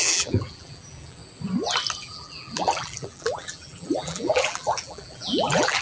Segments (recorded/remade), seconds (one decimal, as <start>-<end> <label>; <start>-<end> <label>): 0.0-1.2 remade; 1.2-2.0 recorded; 2.0-5.8 remade